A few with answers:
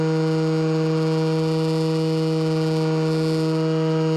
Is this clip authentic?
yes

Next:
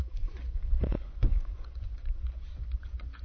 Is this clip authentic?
no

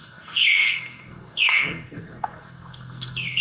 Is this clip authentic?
no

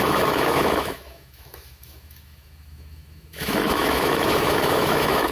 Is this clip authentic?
no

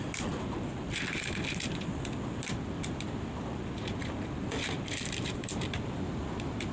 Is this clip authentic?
yes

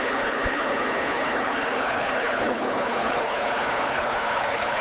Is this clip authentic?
no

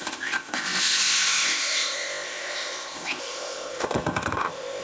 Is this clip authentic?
no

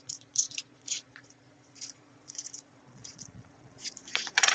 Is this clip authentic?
no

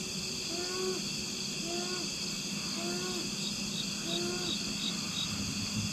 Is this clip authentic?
yes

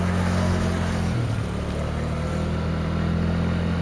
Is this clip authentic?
yes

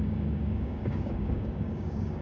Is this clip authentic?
no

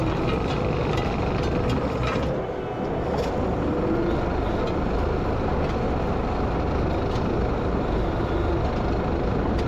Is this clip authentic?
yes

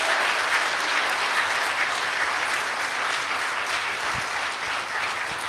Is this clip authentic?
yes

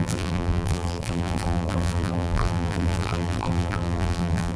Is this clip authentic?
no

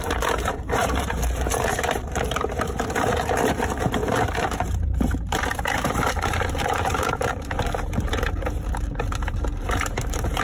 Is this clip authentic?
no